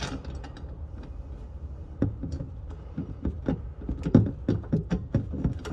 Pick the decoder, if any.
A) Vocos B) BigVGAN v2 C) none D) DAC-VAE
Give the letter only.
C